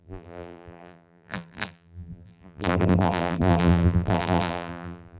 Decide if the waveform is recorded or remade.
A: remade